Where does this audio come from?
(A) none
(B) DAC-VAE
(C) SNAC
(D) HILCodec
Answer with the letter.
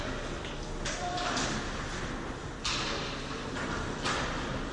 A